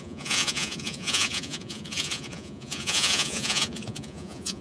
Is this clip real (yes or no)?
no